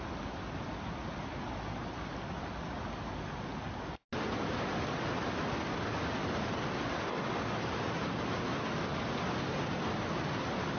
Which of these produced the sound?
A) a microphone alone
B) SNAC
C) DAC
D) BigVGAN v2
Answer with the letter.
A